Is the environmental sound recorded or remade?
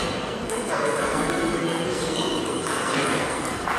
remade